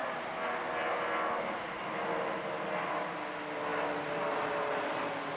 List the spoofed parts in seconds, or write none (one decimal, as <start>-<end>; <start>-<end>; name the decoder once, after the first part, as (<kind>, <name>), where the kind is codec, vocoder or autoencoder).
none